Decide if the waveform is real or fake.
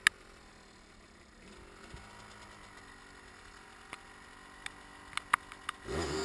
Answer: real